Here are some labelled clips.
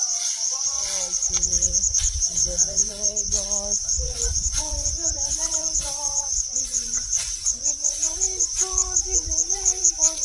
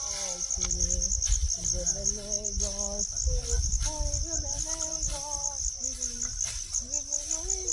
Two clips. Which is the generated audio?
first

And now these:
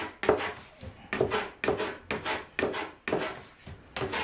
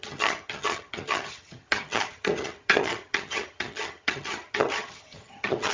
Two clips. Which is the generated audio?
second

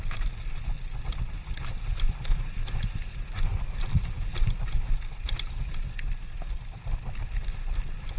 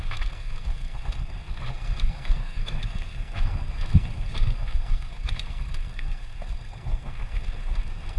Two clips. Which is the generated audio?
second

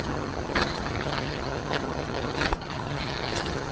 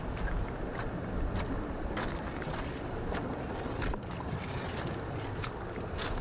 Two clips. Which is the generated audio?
first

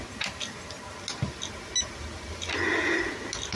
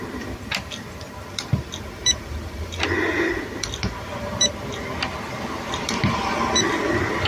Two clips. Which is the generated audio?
second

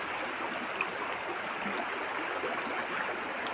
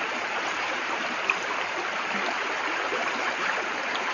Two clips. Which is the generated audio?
second